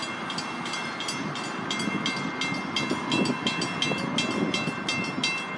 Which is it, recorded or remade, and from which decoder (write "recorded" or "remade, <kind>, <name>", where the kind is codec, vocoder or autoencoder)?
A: recorded